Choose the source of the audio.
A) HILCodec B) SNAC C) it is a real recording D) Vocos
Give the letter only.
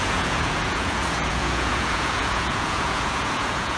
D